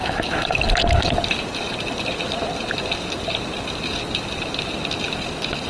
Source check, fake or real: real